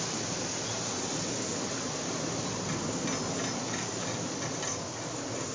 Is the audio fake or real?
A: real